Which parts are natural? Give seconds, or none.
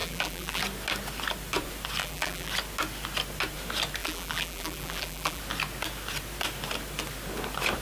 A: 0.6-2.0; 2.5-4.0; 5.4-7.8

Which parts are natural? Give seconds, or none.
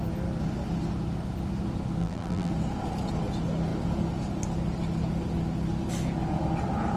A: 0.0-2.0; 2.5-7.0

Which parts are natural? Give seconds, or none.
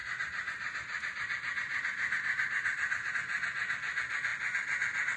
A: 3.1-5.2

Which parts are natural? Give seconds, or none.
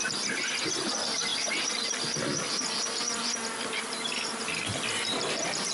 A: 0.0-5.7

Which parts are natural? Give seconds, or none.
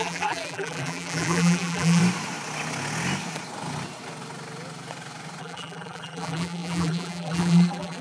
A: 2.0-5.4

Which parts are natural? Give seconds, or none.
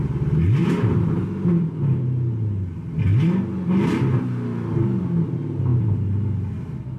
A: 0.0-0.6; 1.8-7.0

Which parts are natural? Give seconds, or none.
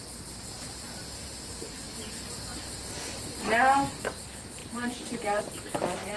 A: 0.0-4.6; 5.4-6.2